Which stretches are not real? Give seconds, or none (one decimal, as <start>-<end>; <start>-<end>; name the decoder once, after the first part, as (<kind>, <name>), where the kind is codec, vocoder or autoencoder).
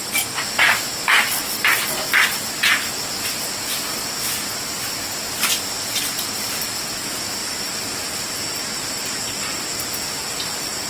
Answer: 7.4-9.2 (vocoder, BigVGAN v2)